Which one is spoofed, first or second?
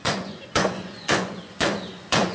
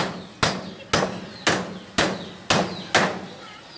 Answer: first